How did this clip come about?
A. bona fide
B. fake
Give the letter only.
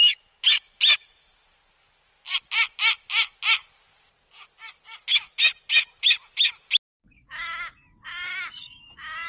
A